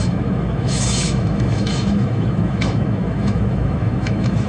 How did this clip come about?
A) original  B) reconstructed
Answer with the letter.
B